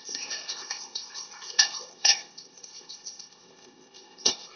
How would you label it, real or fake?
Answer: fake